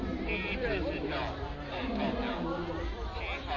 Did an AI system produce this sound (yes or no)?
yes